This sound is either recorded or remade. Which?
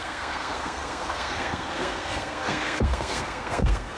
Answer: remade